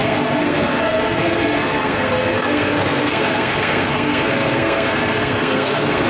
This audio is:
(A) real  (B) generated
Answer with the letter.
B